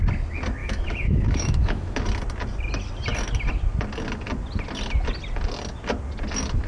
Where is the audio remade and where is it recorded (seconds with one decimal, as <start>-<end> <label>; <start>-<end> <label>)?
0.0-0.6 recorded; 0.6-2.0 remade; 2.0-6.7 recorded

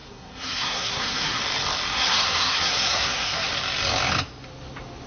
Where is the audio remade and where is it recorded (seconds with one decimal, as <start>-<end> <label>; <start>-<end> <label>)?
0.0-1.4 remade; 1.4-1.9 recorded; 1.9-3.5 remade; 3.5-5.1 recorded